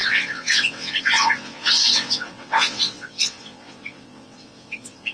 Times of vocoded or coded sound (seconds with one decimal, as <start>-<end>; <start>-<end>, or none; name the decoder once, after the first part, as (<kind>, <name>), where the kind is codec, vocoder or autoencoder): 0.0-5.1 (vocoder, WaveNeXt)